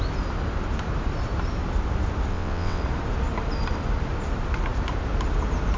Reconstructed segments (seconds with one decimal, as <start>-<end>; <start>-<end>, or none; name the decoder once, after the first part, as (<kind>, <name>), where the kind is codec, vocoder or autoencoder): 2.3-2.8 (vocoder, WaveNeXt)